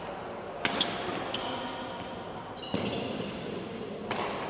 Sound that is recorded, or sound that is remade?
recorded